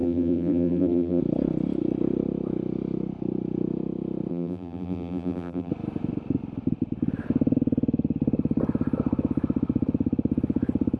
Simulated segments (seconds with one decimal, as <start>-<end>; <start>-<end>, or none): 0.0-1.2; 4.3-5.7